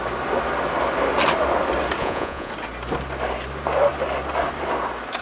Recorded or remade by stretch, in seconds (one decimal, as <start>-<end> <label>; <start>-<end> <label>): 0.0-2.0 recorded; 2.0-2.5 remade; 2.5-5.2 recorded